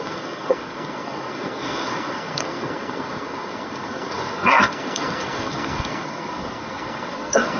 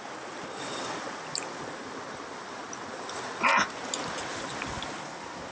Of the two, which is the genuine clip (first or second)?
second